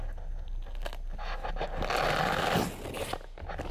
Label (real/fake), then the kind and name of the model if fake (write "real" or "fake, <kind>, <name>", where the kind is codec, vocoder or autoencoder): real